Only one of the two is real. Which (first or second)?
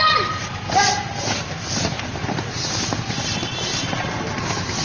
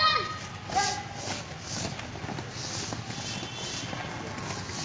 second